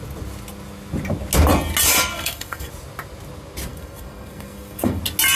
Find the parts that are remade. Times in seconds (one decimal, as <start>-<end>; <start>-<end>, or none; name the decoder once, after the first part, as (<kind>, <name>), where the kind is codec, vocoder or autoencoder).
2.1-2.7 (codec, SNAC); 3.7-5.0